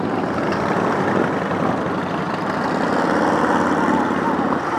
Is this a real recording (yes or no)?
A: yes